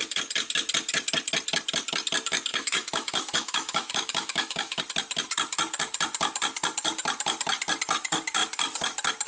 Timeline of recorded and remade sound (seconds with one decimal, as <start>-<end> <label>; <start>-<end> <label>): 0.0-2.5 recorded; 2.5-4.8 remade; 4.8-9.3 recorded